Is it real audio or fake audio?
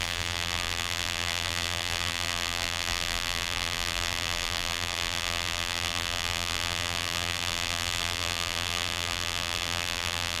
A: fake